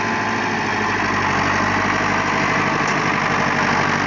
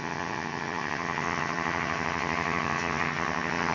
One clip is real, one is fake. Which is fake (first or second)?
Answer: second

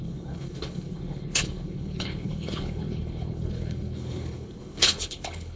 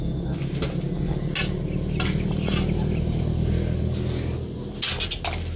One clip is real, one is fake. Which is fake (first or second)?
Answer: first